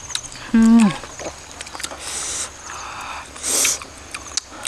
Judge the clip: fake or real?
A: real